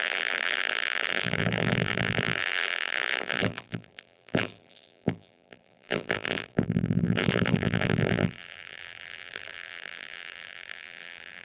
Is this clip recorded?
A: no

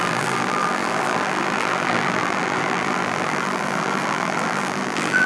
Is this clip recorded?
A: no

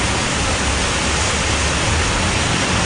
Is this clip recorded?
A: yes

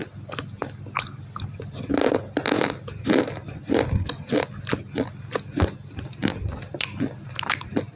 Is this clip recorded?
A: yes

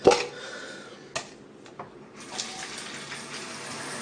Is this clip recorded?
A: yes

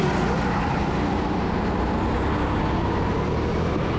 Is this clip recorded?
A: yes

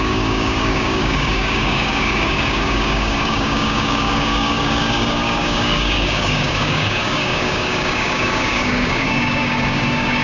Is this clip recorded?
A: no